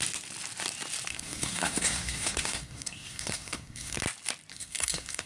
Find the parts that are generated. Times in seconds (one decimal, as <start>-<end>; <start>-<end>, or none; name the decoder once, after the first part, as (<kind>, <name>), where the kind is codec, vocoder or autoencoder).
1.1-4.0 (codec, SNAC); 4.5-5.3